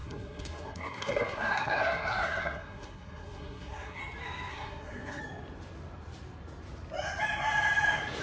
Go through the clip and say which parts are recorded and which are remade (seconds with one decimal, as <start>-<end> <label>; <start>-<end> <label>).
0.0-4.0 remade; 4.0-4.5 recorded; 4.5-5.2 remade; 5.2-8.2 recorded